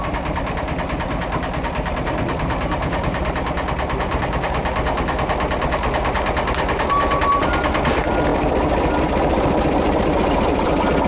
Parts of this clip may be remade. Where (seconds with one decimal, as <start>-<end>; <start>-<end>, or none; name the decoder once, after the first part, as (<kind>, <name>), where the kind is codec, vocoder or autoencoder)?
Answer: none